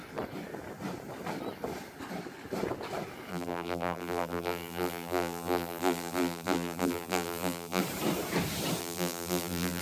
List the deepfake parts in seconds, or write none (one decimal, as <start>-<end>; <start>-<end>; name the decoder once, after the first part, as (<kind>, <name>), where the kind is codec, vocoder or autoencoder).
3.3-7.8 (vocoder, BigVGAN v2); 8.8-9.8